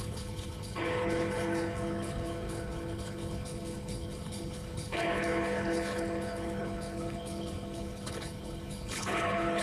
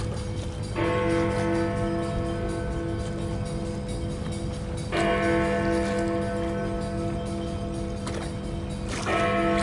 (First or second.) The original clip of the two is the second